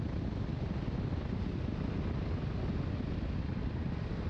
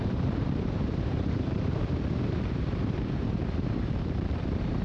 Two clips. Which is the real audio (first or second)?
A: first